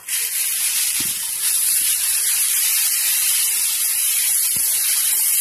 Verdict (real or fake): real